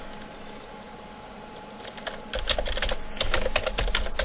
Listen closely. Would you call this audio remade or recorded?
recorded